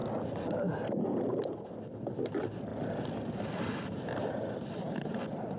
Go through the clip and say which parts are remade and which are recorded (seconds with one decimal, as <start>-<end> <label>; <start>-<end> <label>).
0.0-1.0 remade; 1.0-2.7 recorded; 2.7-3.4 remade; 3.4-5.6 recorded